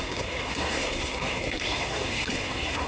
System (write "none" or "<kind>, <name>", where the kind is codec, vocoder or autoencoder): codec, SNAC